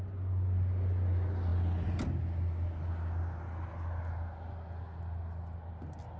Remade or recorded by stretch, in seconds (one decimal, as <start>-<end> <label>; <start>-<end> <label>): 0.0-6.2 recorded